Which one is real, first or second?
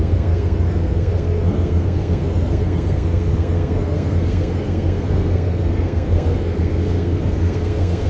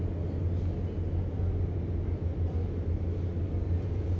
second